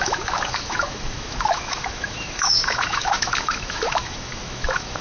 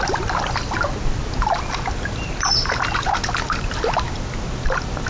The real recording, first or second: second